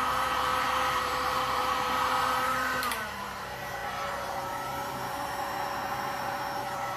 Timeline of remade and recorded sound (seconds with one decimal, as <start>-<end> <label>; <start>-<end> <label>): 0.0-7.0 remade